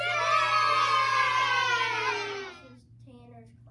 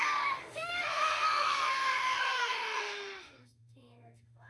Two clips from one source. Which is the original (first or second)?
first